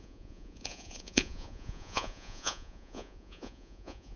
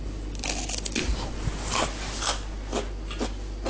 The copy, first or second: first